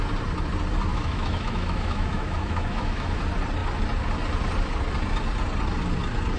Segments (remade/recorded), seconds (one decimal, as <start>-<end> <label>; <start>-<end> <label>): 0.0-0.9 recorded; 0.9-3.2 remade; 3.2-6.4 recorded

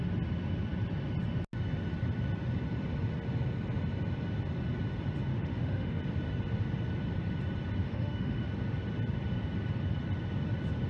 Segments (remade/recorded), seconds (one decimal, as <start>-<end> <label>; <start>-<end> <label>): 0.0-5.3 recorded; 5.3-6.0 remade; 6.0-7.8 recorded; 7.8-8.5 remade; 8.5-10.9 recorded